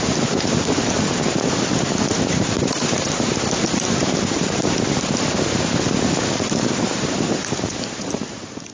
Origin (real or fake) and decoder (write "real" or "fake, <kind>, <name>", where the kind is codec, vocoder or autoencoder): fake, vocoder, BigVGAN v2